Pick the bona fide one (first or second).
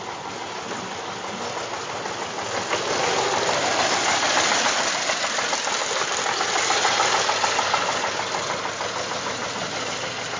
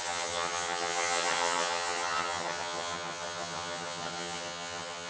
first